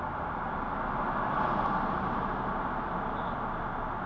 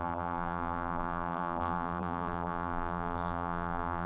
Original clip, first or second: first